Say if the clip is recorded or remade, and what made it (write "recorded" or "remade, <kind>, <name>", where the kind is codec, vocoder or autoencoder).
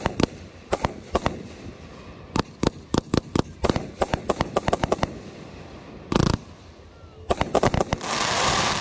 recorded